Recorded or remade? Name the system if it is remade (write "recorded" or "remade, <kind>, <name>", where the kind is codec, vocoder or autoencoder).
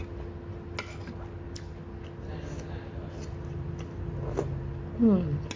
recorded